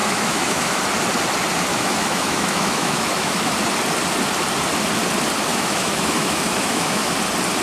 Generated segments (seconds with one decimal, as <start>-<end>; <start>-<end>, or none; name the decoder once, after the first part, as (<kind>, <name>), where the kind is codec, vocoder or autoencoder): 0.0-0.8 (autoencoder, DAC-VAE); 1.7-3.5; 5.5-7.1